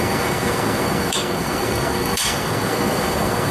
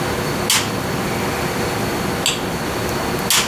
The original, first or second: second